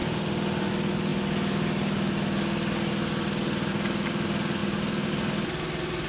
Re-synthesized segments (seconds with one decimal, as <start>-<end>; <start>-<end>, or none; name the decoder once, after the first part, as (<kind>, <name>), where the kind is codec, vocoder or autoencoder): none